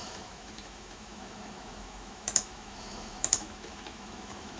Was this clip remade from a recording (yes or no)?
yes